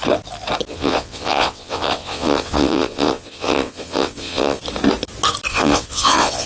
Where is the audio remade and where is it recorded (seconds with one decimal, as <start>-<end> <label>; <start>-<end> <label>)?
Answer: 0.0-0.7 recorded; 0.7-4.6 remade; 4.6-5.5 recorded; 5.5-6.5 remade